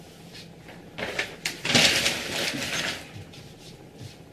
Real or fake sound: real